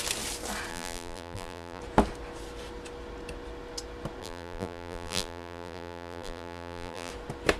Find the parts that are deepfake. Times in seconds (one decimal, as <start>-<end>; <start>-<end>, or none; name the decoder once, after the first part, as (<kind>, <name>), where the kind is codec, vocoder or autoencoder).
0.7-1.8 (vocoder, BigVGAN v2); 4.2-7.1